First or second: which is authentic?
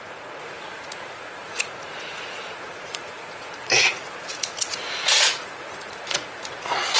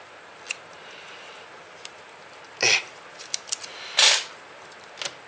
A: second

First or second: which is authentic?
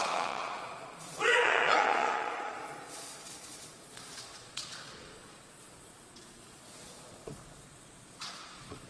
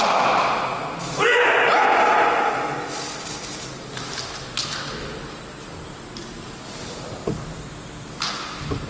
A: second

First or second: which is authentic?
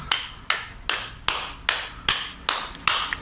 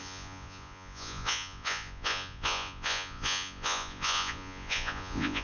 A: first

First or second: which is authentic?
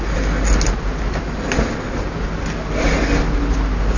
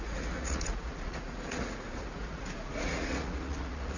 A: first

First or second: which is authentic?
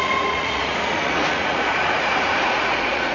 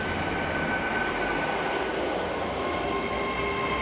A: second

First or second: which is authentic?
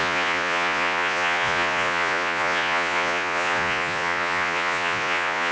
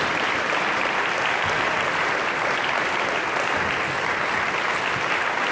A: second